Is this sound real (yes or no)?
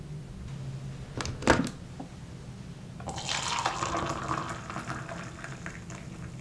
yes